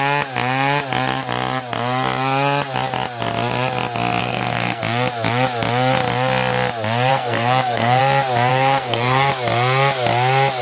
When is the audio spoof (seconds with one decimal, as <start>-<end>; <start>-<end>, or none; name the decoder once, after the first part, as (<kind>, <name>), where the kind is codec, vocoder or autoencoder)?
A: 4.2-4.8 (codec, SNAC); 7.1-8.0; 8.5-9.3